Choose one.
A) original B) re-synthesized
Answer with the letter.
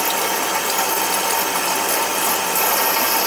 A